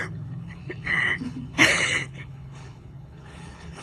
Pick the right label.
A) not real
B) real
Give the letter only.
A